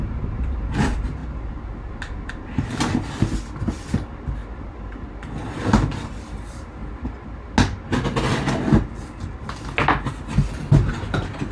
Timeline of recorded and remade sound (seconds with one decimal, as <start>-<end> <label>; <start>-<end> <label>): 0.0-11.5 recorded